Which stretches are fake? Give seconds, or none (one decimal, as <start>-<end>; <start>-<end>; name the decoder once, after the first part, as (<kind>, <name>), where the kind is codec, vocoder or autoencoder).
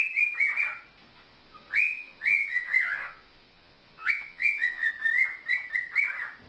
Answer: 1.0-4.9 (vocoder, Vocos)